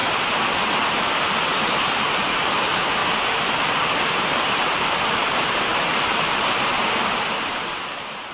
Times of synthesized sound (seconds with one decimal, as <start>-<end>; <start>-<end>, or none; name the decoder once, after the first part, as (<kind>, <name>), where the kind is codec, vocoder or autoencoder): 1.6-3.0 (vocoder, BigVGAN v2); 3.5-5.7; 6.7-8.3